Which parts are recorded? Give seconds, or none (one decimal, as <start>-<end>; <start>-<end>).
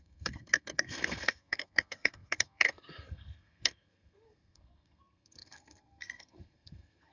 none